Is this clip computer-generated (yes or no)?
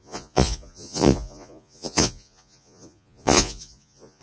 yes